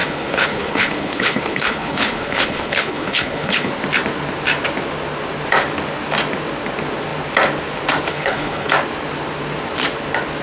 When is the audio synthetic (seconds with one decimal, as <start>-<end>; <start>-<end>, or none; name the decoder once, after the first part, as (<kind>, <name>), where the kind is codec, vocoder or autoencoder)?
0.0-3.7 (codec, HILCodec); 8.1-8.7